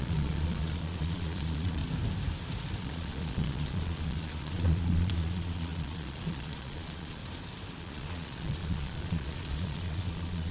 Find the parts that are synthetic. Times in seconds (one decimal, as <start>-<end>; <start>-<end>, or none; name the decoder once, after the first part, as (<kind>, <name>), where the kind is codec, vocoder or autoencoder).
0.0-1.8 (vocoder, Vocos); 2.8-7.2; 7.8-10.5